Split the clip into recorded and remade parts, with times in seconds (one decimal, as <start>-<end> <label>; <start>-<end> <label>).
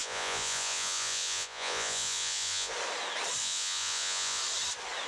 0.0-2.7 remade; 2.7-3.4 recorded; 3.4-4.4 remade; 4.4-5.1 recorded